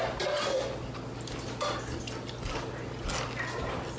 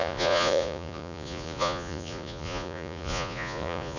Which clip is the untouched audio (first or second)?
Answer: first